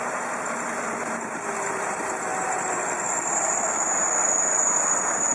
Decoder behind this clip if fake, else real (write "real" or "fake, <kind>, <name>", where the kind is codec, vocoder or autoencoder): real